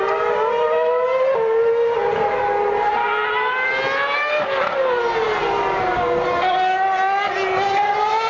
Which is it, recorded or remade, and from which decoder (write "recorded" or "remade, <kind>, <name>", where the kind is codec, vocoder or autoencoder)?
recorded